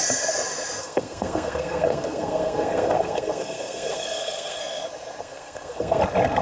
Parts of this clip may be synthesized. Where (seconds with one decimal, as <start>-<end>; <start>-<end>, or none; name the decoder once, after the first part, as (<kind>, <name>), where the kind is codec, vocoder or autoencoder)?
0.8-4.6 (codec, SNAC); 5.2-6.0